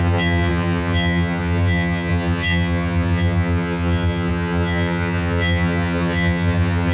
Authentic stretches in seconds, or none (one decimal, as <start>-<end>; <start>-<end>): none

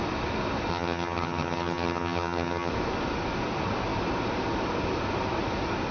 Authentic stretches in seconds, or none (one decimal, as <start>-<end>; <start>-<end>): 0.0-0.7; 2.7-5.9

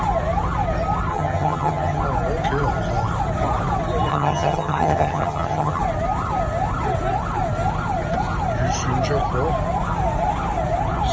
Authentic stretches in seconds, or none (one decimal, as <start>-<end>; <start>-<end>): 0.0-1.1; 2.0-4.1; 5.8-11.1

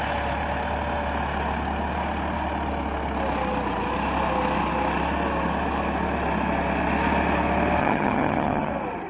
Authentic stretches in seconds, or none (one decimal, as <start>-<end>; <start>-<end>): 0.0-7.8; 8.7-9.1

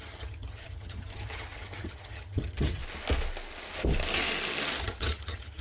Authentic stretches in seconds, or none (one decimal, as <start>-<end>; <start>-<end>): 2.8-4.8

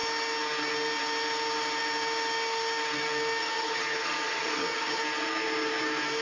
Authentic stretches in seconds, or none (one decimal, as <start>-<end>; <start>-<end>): 0.0-3.4; 5.0-6.2

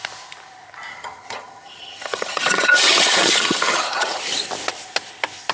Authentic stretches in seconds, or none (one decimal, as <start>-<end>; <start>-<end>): 0.0-0.9; 4.2-5.5

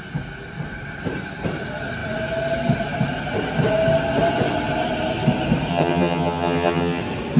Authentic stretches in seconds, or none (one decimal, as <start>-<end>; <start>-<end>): 0.0-5.7; 7.0-7.4